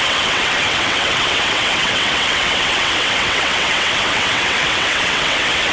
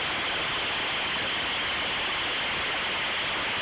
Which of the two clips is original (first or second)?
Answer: second